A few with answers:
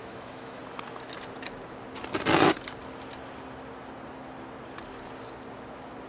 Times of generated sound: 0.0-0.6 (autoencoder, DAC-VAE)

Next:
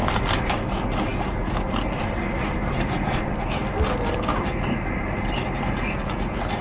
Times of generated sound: none

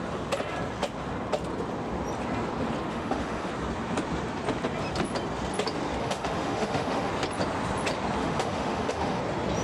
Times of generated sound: 2.9-3.5 (autoencoder, DAC-VAE); 6.0-7.1; 8.2-9.2

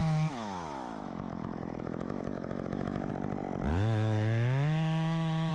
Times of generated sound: 0.0-3.1 (autoencoder, DAC-VAE); 3.7-5.5

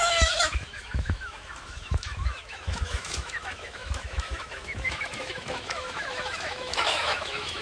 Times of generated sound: 0.0-7.6 (autoencoder, DAC-VAE)